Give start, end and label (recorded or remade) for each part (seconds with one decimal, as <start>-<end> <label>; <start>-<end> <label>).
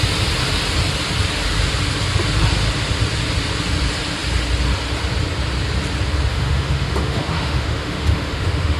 0.0-6.3 recorded; 6.3-8.8 remade